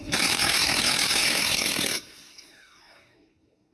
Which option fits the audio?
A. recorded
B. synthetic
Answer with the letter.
B